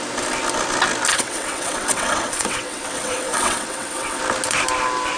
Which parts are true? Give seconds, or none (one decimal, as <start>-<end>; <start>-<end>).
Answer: 0.0-1.1; 4.2-5.2